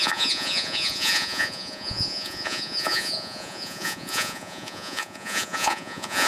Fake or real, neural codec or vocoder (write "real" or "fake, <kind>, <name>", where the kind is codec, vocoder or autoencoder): fake, vocoder, Vocos